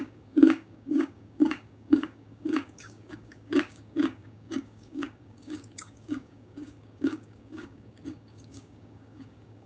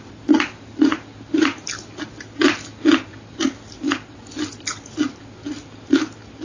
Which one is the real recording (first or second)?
second